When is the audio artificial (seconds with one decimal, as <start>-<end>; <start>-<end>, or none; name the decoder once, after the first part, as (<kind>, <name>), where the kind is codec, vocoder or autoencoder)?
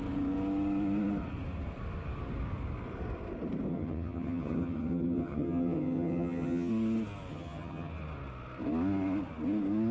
3.7-6.7 (vocoder, HiFi-GAN); 7.3-7.9